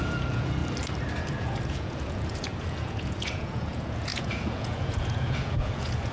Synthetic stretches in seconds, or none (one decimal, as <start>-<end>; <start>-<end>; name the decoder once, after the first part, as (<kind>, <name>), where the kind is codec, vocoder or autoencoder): 0.0-0.6 (vocoder, Vocos); 1.2-6.1